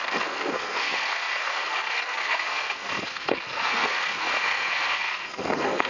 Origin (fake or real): fake